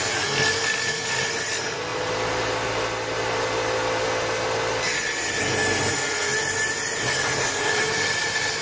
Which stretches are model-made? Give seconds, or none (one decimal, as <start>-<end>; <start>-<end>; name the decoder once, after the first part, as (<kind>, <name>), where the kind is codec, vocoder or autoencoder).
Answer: none